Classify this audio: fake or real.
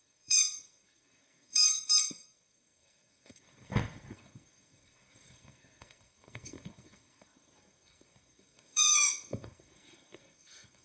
fake